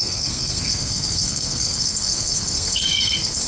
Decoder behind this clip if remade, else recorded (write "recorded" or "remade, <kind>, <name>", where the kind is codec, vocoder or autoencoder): remade, codec, SNAC